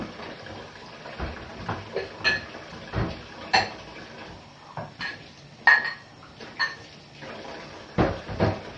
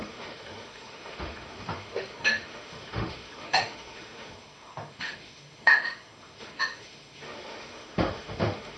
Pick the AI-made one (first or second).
second